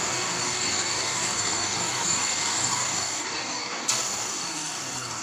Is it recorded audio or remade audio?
remade